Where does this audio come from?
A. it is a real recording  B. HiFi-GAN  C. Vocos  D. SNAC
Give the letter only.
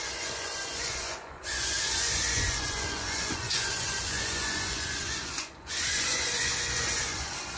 C